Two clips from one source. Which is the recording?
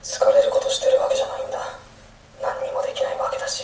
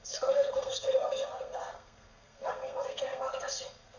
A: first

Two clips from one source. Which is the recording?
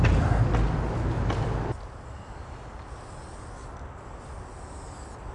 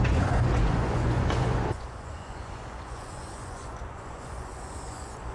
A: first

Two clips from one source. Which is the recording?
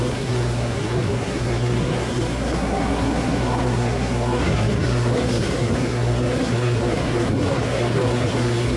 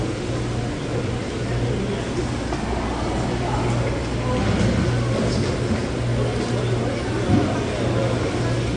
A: second